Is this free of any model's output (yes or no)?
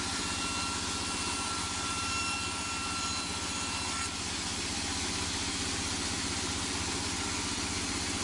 yes